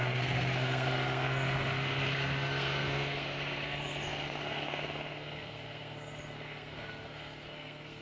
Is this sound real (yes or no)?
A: no